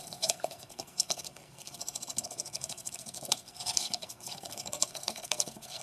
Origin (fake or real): fake